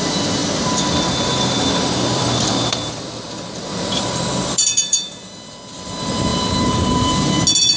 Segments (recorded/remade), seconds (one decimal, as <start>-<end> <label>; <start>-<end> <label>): 0.0-0.4 recorded; 0.4-5.1 remade; 5.1-6.3 recorded; 6.3-7.1 remade; 7.1-7.8 recorded